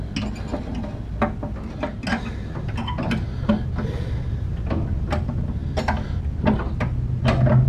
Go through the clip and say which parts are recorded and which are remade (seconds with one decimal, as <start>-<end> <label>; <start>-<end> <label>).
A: 0.0-7.7 recorded